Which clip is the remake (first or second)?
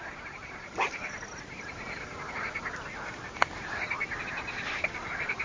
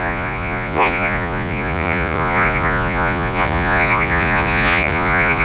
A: second